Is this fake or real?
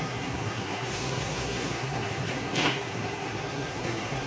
fake